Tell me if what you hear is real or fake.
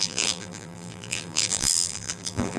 fake